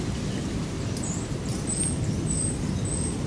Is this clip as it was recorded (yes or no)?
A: yes